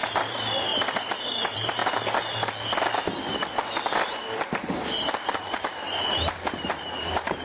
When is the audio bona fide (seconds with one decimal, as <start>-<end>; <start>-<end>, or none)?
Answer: 0.7-1.2; 1.8-5.4